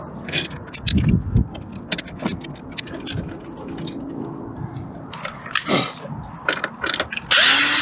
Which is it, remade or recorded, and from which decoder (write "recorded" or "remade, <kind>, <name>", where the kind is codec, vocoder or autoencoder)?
recorded